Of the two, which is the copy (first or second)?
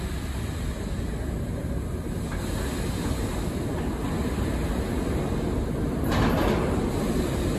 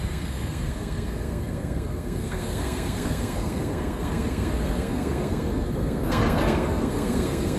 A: second